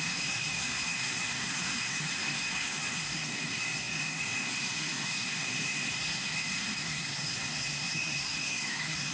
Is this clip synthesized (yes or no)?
yes